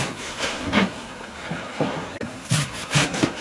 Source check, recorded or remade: remade